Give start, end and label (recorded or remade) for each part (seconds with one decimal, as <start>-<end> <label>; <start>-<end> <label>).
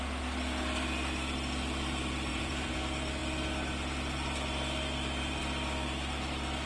0.0-2.3 recorded; 2.3-2.8 remade; 2.8-6.7 recorded